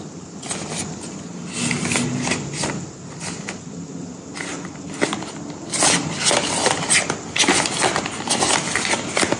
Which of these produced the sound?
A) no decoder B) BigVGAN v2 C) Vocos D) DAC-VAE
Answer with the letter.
A